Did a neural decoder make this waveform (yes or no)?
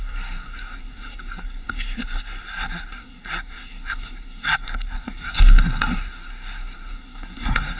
yes